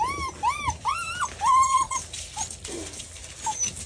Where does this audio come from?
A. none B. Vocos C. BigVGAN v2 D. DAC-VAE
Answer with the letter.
A